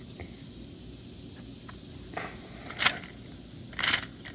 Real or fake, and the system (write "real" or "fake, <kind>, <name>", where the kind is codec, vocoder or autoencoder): real